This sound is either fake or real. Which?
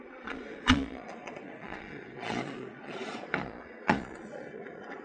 fake